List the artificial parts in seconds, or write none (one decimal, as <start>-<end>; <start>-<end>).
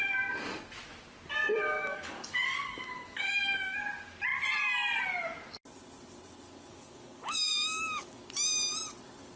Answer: 1.6-3.8; 6.7-8.2